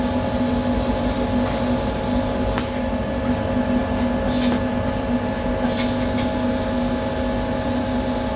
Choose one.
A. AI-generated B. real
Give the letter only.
B